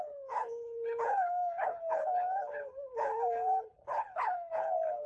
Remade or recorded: remade